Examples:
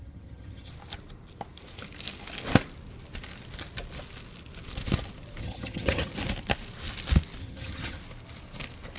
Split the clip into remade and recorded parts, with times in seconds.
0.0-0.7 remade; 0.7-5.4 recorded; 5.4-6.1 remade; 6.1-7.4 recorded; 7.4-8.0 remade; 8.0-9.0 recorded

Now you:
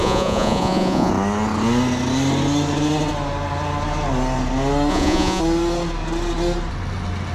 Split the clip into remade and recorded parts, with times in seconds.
0.0-1.1 remade; 1.1-4.9 recorded; 4.9-5.4 remade; 5.4-7.3 recorded